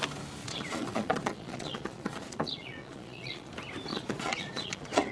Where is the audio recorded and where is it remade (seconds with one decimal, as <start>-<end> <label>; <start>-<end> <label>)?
0.0-0.4 recorded; 0.4-3.5 remade; 3.5-3.9 recorded; 3.9-5.1 remade